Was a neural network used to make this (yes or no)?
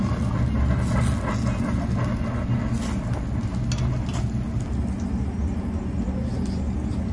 no